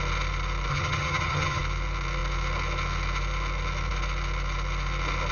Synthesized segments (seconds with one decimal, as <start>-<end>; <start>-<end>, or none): 0.7-1.6